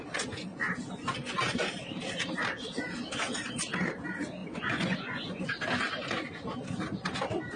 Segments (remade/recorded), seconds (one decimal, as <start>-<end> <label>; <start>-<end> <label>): 0.0-4.4 recorded; 4.4-5.4 remade; 5.4-7.6 recorded